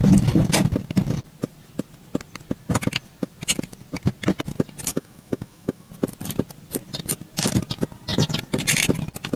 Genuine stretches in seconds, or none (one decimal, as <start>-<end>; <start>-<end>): 0.0-4.9; 5.9-9.4